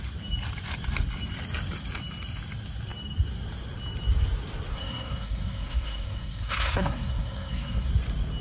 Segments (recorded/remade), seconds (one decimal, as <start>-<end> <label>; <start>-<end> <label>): 0.0-4.7 recorded; 4.7-7.9 remade; 7.9-8.4 recorded